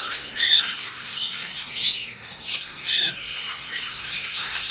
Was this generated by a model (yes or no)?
yes